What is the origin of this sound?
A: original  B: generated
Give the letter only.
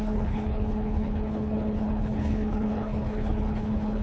B